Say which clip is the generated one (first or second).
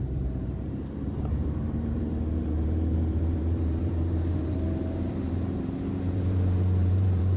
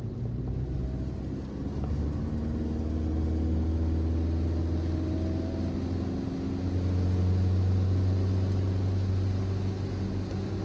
first